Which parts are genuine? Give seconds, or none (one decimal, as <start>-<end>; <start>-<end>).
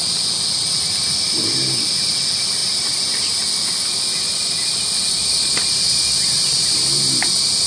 0.0-7.7